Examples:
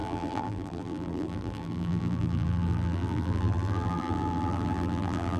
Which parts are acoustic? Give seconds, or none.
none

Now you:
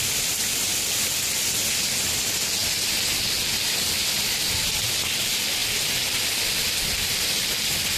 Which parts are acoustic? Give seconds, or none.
0.0-8.0

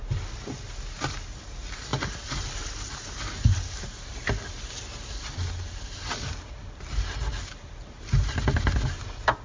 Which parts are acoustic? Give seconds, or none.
0.0-9.4